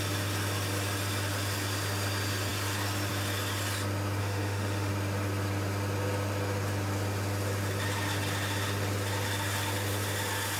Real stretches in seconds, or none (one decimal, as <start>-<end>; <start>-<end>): 0.0-4.2; 4.9-10.6